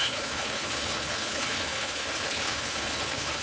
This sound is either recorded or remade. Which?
remade